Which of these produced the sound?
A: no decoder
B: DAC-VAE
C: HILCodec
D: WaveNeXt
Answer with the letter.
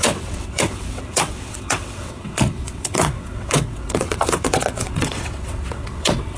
D